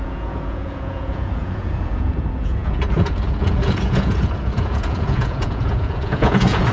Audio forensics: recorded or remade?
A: remade